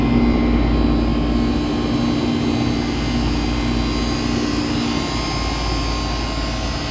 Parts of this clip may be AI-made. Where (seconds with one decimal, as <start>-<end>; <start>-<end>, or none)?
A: none

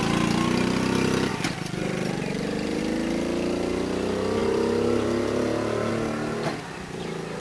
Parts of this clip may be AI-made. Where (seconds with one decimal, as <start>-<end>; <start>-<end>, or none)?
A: 1.3-2.8

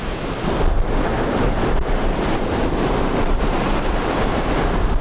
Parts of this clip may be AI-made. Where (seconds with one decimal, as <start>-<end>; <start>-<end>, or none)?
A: 1.1-4.1

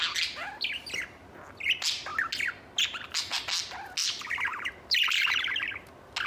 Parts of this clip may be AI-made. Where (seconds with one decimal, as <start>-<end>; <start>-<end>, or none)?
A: 4.0-5.4

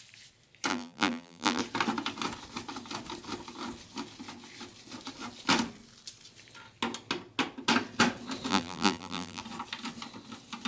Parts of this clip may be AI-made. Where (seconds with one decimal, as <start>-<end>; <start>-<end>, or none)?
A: 0.7-1.6; 8.5-9.4